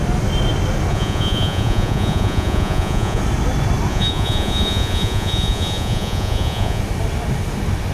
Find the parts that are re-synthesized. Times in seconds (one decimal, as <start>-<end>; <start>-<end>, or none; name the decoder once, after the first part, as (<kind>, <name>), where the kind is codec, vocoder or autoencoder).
0.9-3.2 (vocoder, Vocos); 3.9-6.8